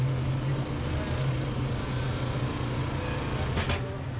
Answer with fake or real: real